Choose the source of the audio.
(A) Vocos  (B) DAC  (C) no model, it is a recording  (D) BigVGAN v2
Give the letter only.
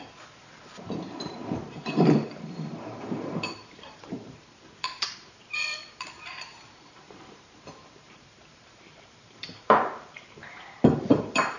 D